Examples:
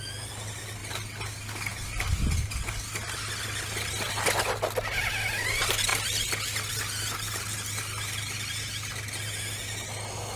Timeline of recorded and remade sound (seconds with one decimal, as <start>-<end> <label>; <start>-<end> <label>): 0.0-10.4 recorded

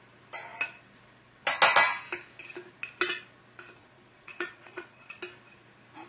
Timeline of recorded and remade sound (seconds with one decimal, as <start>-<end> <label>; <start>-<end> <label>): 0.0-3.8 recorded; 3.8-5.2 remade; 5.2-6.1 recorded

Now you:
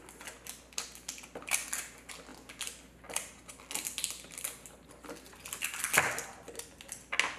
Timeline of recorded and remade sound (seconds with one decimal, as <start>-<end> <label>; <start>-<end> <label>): 0.0-7.4 recorded

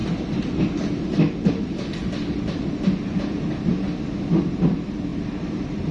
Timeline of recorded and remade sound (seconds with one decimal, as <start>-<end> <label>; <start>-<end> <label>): 0.0-5.1 recorded; 5.1-5.9 remade

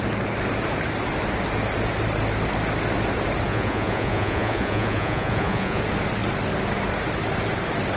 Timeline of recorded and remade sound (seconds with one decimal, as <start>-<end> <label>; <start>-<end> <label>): 0.0-3.5 recorded; 3.5-5.8 remade; 5.8-8.0 recorded

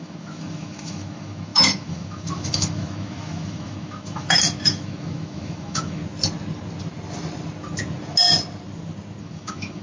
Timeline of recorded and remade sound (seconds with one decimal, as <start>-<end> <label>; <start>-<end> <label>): 0.0-6.0 remade; 6.0-9.2 recorded; 9.2-9.8 remade